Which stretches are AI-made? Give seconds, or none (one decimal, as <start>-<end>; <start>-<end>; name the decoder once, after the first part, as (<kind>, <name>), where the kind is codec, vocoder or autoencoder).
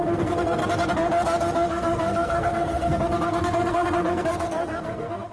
0.0-0.6 (codec, SNAC); 1.7-5.3